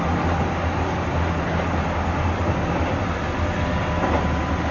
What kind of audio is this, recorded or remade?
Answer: recorded